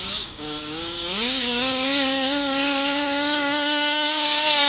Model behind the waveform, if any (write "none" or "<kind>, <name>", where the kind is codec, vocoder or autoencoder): codec, DAC